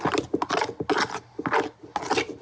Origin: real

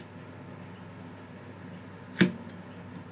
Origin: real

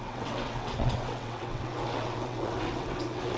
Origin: fake